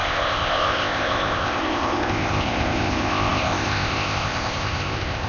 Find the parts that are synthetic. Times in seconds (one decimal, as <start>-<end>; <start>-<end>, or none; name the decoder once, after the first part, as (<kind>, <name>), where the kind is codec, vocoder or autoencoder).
0.0-5.3 (codec, ZipCodec)